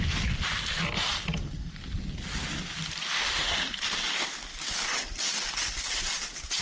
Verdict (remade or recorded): recorded